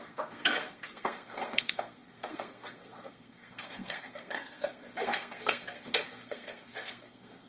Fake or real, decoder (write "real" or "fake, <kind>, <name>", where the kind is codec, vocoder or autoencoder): fake, codec, SNAC